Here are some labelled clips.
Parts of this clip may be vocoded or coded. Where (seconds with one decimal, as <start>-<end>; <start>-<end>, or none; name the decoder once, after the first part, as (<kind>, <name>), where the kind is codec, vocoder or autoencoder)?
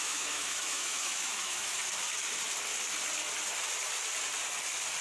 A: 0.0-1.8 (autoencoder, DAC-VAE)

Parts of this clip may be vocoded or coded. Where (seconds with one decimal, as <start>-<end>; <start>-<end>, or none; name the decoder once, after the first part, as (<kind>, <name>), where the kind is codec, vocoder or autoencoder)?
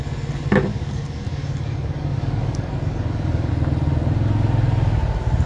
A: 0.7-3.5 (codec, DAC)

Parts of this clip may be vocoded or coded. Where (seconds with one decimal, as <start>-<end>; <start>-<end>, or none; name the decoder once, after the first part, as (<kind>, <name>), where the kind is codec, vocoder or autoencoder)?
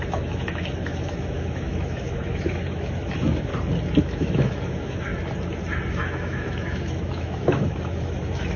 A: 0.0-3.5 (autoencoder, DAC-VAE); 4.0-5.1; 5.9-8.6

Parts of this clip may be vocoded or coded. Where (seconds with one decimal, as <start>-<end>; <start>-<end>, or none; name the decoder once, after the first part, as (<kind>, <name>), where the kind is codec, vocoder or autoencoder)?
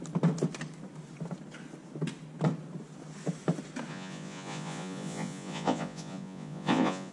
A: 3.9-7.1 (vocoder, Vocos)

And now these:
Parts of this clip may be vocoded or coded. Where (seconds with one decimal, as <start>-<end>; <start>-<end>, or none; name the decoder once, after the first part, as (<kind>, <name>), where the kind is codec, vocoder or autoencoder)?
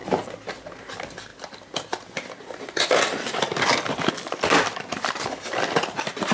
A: 0.0-0.6 (vocoder, BigVGAN v2)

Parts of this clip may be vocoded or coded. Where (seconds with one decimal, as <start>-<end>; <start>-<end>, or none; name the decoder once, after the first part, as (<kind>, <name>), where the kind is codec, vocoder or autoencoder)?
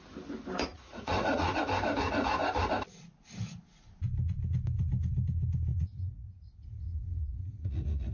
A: 0.7-1.6 (vocoder, Vocos); 5.7-8.1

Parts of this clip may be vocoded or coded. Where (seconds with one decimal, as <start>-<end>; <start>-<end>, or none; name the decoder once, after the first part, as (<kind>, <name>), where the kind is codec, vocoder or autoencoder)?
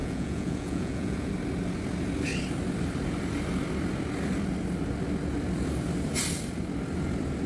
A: 0.0-1.3 (vocoder, Vocos)